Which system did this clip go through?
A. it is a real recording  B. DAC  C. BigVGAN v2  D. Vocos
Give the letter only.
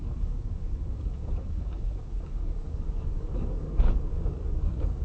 B